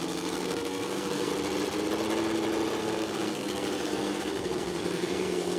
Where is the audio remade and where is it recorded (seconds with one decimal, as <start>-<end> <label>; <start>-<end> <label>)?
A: 0.0-1.3 remade; 1.3-2.8 recorded; 2.8-5.6 remade